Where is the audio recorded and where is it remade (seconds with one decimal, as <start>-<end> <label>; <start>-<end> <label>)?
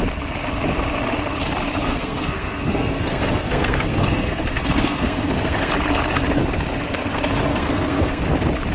0.0-1.8 recorded; 1.8-5.7 remade; 5.7-7.5 recorded; 7.5-8.2 remade; 8.2-8.7 recorded